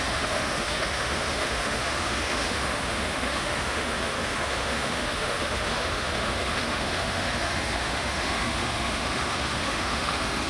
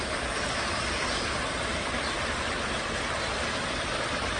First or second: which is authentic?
second